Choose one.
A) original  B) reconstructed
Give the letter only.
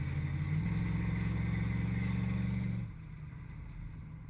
A